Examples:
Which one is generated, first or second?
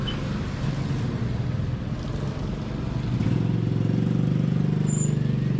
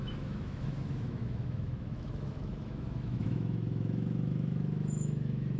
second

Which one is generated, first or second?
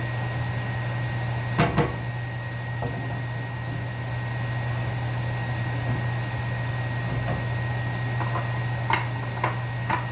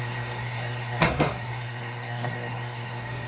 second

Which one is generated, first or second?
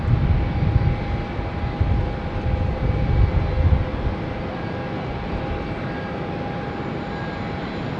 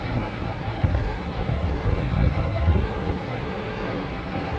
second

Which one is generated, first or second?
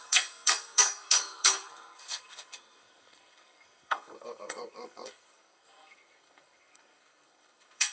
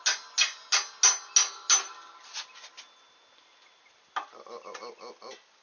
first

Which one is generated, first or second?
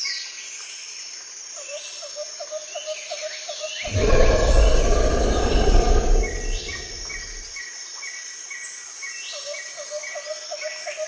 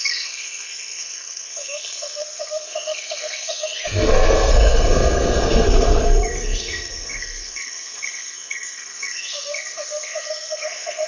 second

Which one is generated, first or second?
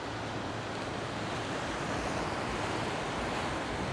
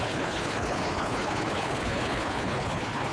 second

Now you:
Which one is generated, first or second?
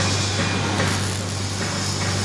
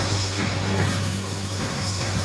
second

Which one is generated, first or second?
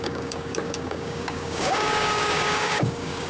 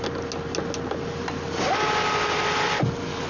first